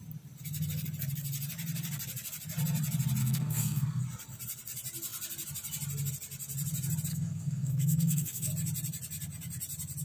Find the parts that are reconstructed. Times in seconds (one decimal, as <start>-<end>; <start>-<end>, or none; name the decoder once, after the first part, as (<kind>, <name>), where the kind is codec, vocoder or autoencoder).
3.2-4.0 (codec, SNAC); 7.1-8.5